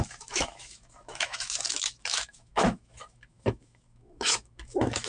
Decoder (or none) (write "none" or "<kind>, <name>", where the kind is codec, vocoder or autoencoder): autoencoder, DAC-VAE